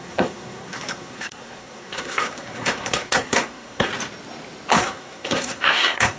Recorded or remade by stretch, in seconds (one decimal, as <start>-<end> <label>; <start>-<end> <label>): 0.0-3.9 remade; 3.9-4.7 recorded; 4.7-6.2 remade